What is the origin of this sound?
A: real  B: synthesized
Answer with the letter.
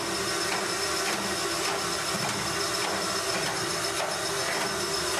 A